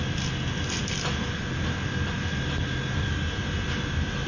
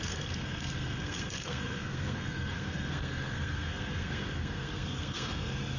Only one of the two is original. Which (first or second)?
first